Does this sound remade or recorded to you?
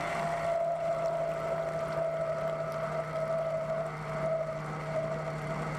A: recorded